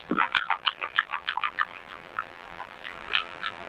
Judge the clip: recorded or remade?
remade